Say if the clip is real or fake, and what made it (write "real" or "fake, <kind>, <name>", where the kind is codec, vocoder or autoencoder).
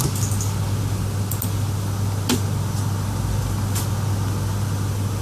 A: real